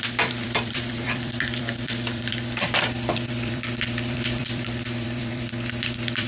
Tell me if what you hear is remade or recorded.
remade